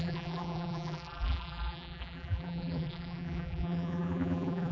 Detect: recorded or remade remade